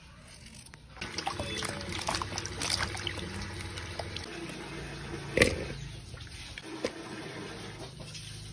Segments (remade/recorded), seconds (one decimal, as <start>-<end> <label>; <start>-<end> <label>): 0.0-8.5 recorded